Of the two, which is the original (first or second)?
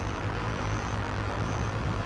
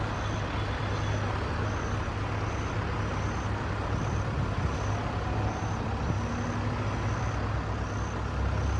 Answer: second